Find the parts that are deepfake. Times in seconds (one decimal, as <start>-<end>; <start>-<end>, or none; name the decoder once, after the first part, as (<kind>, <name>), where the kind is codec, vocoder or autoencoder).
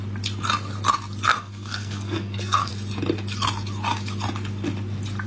1.3-2.7 (codec, SNAC)